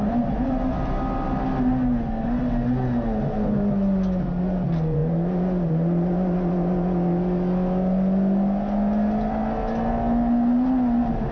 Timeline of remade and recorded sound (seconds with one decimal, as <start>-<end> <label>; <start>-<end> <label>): 0.0-11.3 recorded